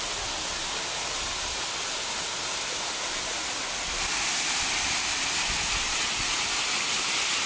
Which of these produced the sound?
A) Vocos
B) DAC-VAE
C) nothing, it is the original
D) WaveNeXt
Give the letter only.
C